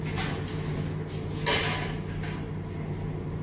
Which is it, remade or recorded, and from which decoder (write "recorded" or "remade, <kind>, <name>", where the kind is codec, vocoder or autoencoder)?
recorded